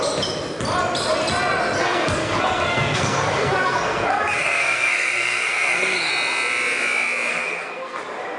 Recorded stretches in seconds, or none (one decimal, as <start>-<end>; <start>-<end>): 0.0-1.8; 6.1-7.3; 8.0-8.4